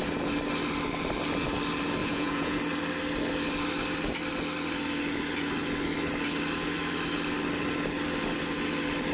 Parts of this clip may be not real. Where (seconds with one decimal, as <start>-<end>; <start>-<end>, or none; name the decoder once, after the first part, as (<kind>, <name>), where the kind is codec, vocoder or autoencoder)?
2.0-2.6 (vocoder, Vocos)